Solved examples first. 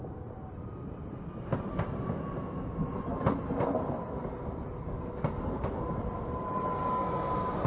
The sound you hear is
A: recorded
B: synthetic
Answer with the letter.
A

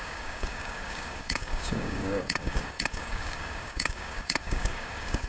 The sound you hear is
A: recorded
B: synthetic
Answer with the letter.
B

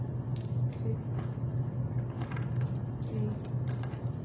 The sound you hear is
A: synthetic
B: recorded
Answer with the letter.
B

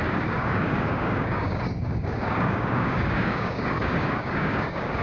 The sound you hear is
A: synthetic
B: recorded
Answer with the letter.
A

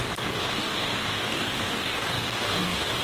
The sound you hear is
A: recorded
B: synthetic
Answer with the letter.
B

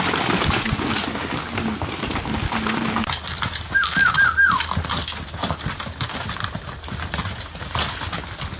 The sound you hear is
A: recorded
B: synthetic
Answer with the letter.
A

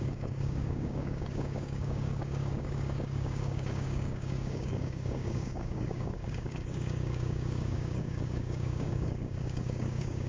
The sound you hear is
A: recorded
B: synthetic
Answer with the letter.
B